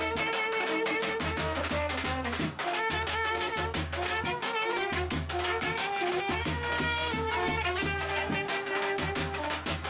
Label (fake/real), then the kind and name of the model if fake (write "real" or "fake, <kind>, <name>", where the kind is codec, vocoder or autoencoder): fake, codec, DAC